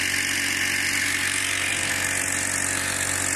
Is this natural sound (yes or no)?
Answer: yes